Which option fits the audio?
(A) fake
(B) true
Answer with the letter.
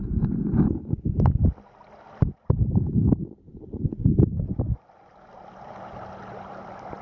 B